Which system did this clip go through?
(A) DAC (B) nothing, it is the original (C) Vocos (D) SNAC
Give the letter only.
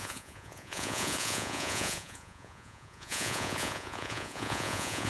C